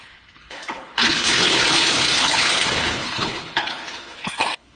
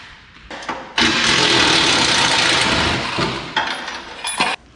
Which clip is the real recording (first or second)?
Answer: second